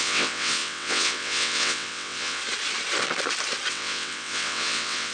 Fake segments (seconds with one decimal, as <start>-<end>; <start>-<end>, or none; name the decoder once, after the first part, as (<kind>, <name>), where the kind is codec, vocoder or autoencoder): 0.0-2.4 (vocoder, WaveNeXt); 3.7-5.1